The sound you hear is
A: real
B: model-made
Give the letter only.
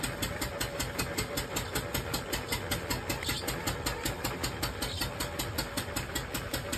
A